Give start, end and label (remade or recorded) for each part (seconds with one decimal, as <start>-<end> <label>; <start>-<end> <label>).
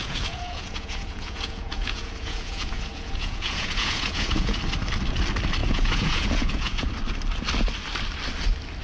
0.0-4.6 remade; 4.6-5.6 recorded; 5.6-6.9 remade; 6.9-8.8 recorded